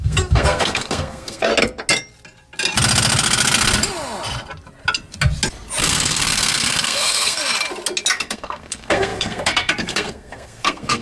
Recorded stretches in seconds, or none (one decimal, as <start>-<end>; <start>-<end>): 1.5-5.8; 7.4-8.1